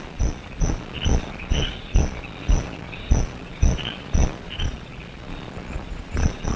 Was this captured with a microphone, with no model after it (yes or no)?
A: no